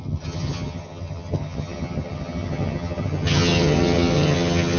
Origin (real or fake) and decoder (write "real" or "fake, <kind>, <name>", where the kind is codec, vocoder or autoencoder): fake, vocoder, HiFi-GAN